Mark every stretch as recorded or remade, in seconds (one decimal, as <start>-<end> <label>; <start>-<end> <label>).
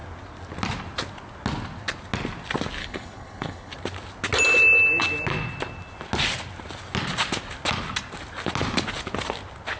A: 0.0-2.8 recorded; 2.8-3.7 remade; 3.7-9.8 recorded